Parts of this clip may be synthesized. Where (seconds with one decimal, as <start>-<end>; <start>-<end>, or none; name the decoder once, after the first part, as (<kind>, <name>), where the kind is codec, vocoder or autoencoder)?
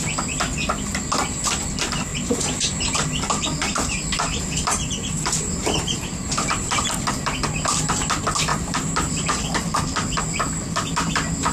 2.1-7.0 (vocoder, BigVGAN v2); 8.5-10.2